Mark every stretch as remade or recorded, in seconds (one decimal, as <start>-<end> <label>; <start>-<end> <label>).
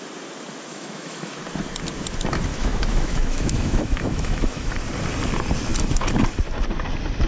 0.0-0.7 recorded; 0.7-1.4 remade; 1.4-2.5 recorded; 2.5-4.7 remade; 4.7-7.3 recorded